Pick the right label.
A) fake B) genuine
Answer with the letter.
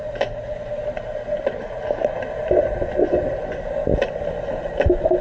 B